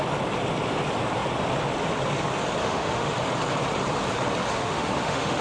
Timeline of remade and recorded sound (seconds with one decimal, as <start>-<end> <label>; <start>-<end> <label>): 0.0-2.6 recorded; 2.6-3.1 remade; 3.1-4.5 recorded; 4.5-5.4 remade